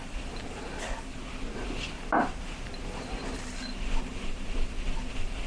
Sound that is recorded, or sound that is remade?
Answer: recorded